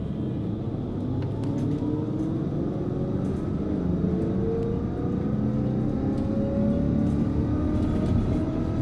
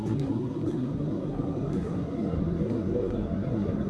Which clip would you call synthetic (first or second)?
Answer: second